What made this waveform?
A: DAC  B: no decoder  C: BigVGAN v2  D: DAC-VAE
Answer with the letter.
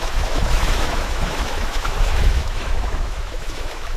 D